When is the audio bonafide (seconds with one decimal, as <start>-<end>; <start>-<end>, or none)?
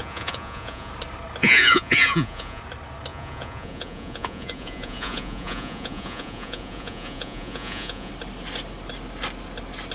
0.9-1.4; 2.6-3.1; 8.1-9.9